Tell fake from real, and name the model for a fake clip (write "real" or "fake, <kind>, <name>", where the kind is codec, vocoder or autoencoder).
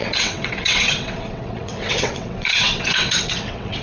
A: fake, vocoder, WaveNeXt